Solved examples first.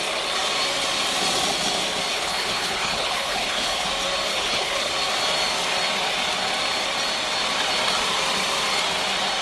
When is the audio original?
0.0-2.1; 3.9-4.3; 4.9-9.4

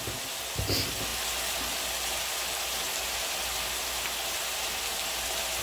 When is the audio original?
0.0-5.6

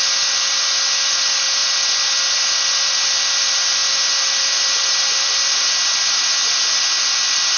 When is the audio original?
0.0-7.6

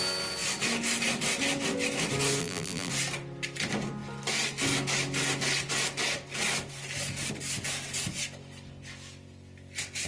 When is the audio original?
0.0-2.4; 2.9-10.1

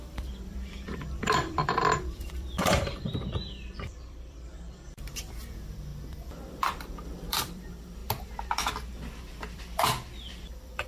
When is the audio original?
8.0-9.5

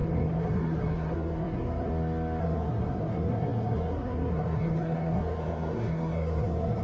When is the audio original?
1.9-2.4

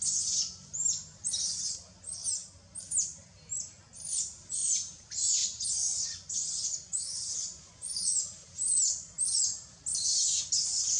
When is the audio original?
0.0-5.4; 8.2-11.0